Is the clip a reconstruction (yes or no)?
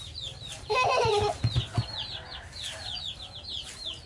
no